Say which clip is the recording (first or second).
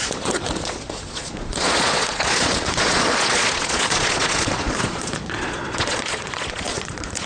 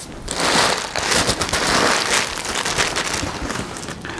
second